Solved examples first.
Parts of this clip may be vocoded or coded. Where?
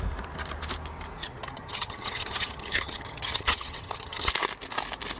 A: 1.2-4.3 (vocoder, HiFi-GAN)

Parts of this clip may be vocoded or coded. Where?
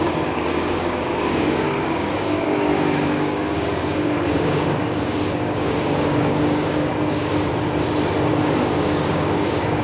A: 0.0-7.5 (codec, DAC); 8.3-9.8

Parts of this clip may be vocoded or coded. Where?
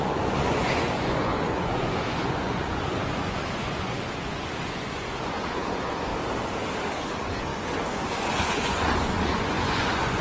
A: 0.0-6.1 (vocoder, Vocos); 7.0-10.2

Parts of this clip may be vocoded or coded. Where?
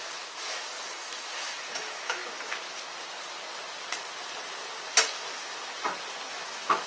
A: 0.0-2.2 (autoencoder, DAC-VAE); 6.3-6.9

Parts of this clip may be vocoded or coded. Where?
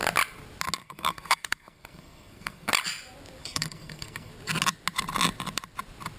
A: 0.8-2.7 (codec, SNAC); 3.4-4.3